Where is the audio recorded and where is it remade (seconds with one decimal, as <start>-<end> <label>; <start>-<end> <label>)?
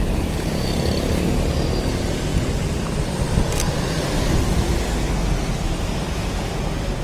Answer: 0.0-7.0 recorded